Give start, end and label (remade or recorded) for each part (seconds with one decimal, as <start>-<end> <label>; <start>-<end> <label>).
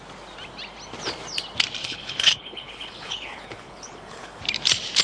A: 0.0-1.8 recorded; 1.8-4.4 remade; 4.4-5.0 recorded